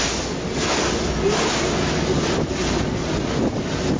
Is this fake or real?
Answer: real